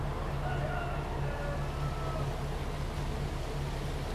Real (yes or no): yes